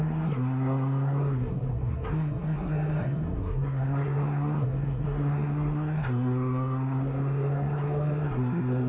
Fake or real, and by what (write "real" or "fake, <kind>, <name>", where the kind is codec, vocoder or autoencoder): fake, codec, SNAC